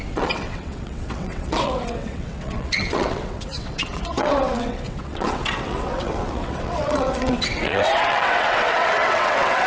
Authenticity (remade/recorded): remade